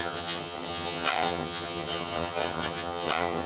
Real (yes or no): no